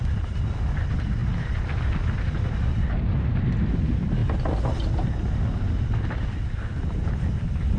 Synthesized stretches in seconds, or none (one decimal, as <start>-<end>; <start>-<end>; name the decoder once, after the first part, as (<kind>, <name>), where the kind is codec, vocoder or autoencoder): 1.2-1.7 (vocoder, BigVGAN v2)